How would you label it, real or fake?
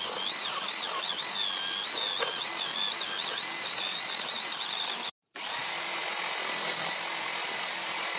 real